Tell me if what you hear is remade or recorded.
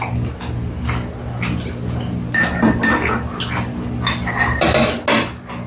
recorded